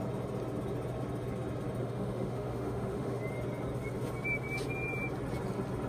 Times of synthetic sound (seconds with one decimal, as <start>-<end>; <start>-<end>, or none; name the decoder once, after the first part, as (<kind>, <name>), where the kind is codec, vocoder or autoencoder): 1.8-3.2 (autoencoder, DAC-VAE)